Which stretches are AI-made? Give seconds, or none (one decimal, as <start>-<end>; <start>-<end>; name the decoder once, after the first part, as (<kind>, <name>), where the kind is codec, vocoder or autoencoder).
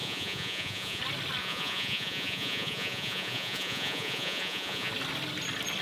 0.0-1.0 (vocoder, Vocos); 1.4-4.9